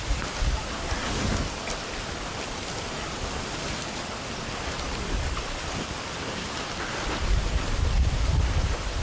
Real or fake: real